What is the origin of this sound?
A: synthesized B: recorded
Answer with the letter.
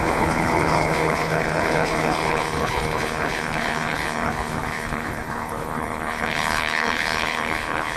A